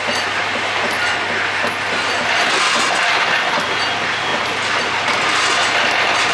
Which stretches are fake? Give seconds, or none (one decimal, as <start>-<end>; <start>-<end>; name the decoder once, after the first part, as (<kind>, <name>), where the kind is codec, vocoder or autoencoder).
none